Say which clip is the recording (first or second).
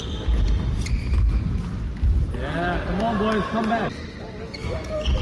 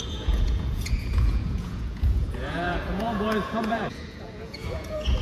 first